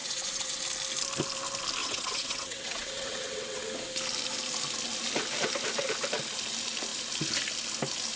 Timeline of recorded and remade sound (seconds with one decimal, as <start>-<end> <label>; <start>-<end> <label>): 0.0-0.6 remade; 0.6-1.8 recorded; 1.8-3.6 remade; 3.6-8.2 recorded